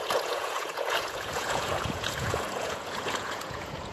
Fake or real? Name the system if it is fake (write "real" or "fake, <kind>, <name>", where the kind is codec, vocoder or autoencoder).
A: fake, vocoder, Vocos